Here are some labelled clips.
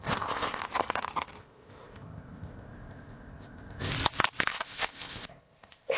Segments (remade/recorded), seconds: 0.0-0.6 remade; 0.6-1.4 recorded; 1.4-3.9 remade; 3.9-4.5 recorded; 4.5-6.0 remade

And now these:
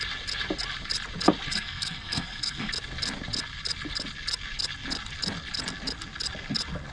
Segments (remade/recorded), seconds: 0.0-1.5 recorded; 1.5-2.7 remade; 2.7-6.9 recorded

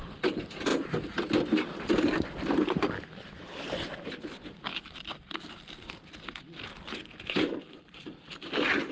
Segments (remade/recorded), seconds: 0.0-8.9 recorded